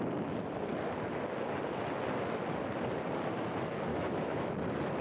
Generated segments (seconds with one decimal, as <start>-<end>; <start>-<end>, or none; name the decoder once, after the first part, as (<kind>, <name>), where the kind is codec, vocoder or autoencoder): 3.9-4.5 (autoencoder, DAC-VAE)